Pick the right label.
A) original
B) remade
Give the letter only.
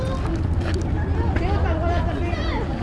A